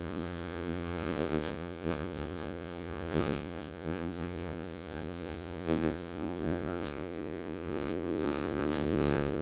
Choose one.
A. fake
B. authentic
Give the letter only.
A